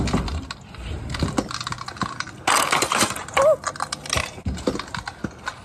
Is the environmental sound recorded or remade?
recorded